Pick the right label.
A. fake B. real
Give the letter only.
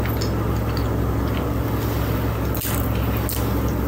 B